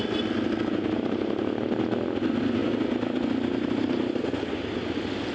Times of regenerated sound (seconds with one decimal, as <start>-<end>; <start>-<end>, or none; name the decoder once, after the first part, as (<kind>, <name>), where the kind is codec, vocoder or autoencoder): none